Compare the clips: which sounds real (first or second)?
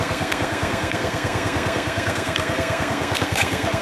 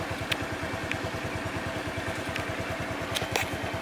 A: second